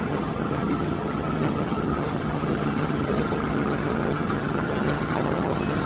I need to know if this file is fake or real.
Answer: fake